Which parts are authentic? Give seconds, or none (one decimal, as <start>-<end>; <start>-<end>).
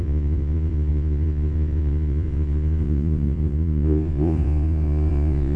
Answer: none